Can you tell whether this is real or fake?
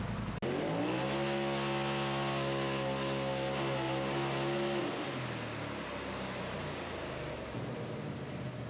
real